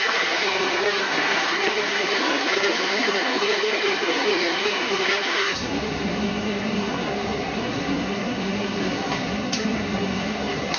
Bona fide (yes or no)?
no